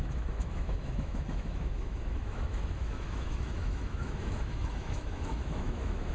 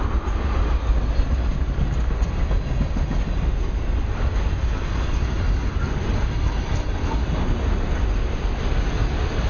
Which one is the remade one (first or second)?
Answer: first